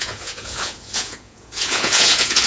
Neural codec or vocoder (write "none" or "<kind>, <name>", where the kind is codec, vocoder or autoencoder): vocoder, Vocos